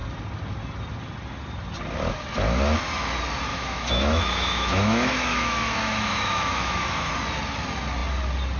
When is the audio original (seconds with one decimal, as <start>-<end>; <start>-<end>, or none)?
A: 0.0-3.5; 7.1-8.6